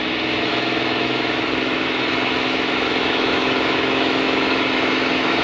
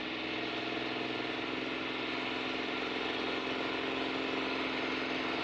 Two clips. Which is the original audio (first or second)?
second